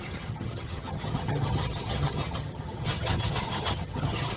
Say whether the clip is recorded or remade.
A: remade